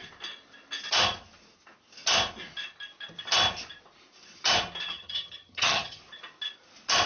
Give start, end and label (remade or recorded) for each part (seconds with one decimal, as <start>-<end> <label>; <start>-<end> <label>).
0.0-4.9 recorded; 4.9-6.0 remade; 6.0-7.1 recorded